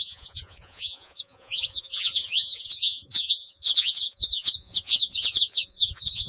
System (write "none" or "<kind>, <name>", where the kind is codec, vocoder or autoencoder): vocoder, Vocos